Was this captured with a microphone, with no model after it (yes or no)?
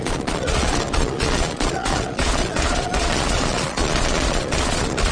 no